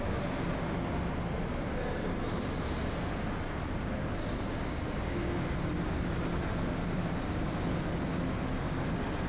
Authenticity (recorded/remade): recorded